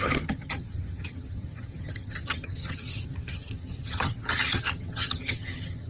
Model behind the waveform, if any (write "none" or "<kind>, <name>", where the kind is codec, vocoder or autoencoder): vocoder, HiFi-GAN